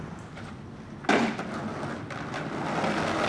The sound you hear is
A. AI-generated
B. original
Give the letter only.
B